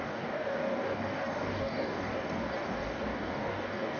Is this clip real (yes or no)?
no